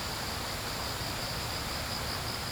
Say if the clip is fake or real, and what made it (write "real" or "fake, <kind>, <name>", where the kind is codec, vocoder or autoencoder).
real